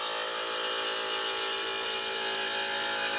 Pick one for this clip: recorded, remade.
recorded